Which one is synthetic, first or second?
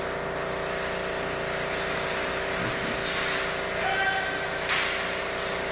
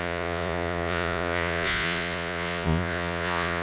second